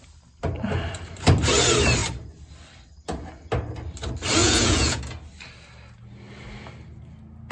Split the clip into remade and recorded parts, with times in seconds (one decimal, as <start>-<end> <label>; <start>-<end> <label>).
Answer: 0.0-4.4 recorded; 4.4-5.0 remade; 5.0-7.5 recorded